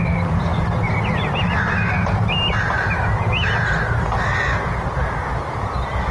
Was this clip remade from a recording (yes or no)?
no